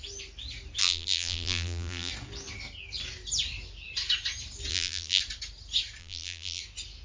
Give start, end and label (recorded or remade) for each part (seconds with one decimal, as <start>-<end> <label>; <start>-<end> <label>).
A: 0.0-0.8 recorded; 0.8-2.1 remade; 2.1-4.7 recorded; 4.7-5.2 remade; 5.2-6.0 recorded; 6.0-6.6 remade; 6.6-7.0 recorded